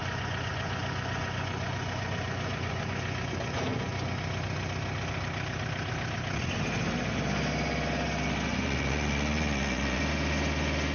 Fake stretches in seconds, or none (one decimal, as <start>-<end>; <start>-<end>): 0.0-4.2; 8.5-10.0